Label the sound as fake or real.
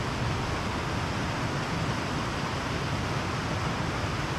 real